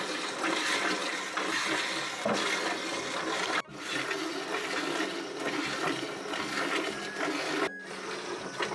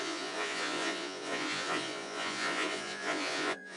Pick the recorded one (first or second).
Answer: first